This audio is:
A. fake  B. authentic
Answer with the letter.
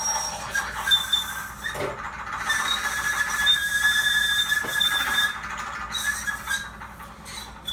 B